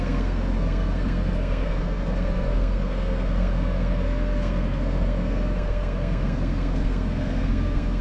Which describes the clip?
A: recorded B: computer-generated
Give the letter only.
B